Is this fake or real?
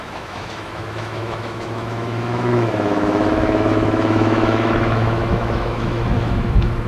fake